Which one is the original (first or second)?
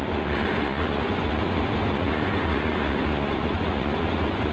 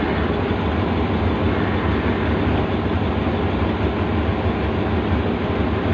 second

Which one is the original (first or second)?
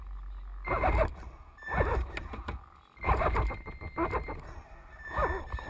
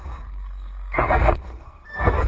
first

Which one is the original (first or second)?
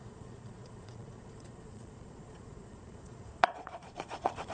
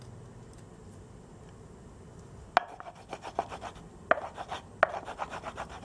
second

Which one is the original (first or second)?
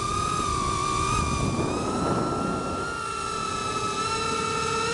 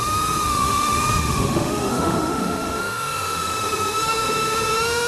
first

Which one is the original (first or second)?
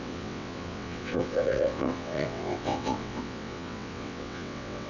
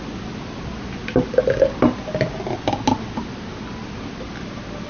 second